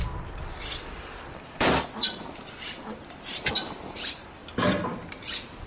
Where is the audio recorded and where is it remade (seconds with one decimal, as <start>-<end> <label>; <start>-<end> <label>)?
0.0-4.4 remade; 4.4-5.7 recorded